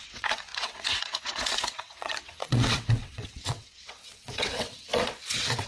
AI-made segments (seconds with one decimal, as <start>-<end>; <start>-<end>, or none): 0.0-5.7